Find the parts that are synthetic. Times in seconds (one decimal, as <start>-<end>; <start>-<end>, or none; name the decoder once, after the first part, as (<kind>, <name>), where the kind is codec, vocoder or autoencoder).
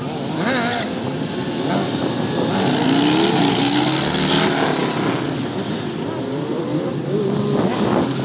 3.5-4.3 (codec, SNAC)